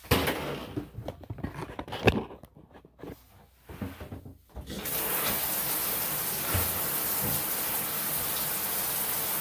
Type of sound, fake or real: real